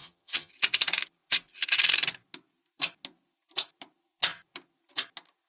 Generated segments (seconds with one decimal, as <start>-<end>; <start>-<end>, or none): 0.0-0.5